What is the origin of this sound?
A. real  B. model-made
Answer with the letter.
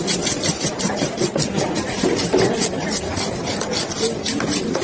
A